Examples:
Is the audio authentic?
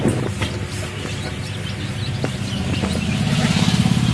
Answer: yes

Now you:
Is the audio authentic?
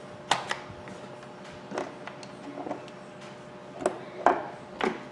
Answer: yes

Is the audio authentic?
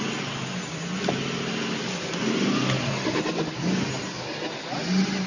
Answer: yes